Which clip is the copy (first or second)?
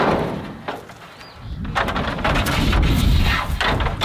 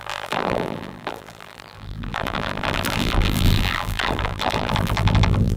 second